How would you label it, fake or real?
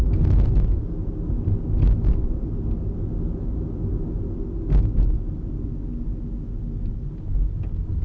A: real